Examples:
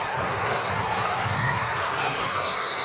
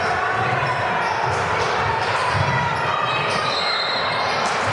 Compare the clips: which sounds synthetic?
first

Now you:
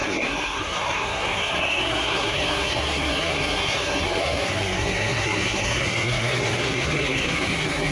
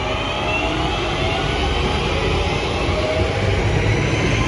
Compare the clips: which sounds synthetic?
first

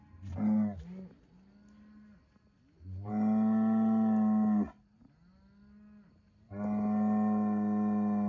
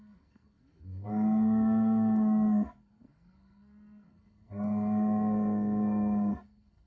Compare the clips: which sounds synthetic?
second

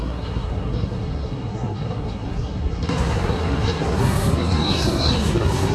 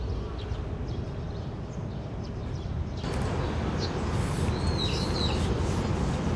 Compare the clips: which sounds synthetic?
first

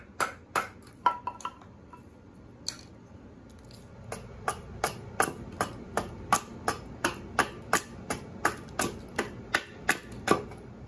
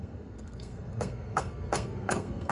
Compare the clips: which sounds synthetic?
second